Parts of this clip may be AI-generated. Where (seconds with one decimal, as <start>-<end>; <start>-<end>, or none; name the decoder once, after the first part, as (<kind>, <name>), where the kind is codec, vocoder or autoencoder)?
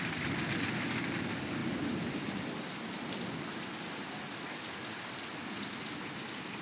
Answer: 1.6-4.7 (vocoder, BigVGAN v2)